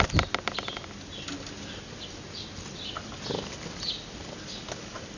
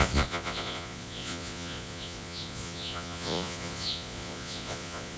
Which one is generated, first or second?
second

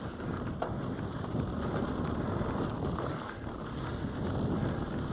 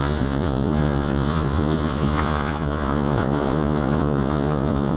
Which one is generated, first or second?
second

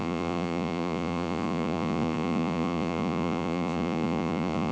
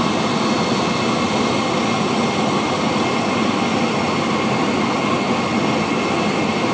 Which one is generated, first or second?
first